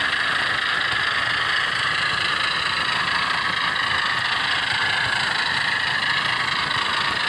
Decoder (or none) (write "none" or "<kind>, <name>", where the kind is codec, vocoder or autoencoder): none